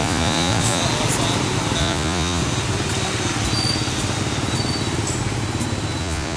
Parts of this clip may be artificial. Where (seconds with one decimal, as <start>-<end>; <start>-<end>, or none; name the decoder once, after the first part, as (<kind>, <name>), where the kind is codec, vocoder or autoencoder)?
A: 0.0-0.8 (vocoder, Vocos); 1.8-2.4; 6.0-6.4